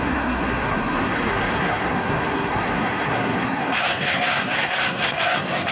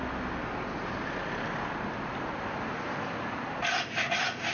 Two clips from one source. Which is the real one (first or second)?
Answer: second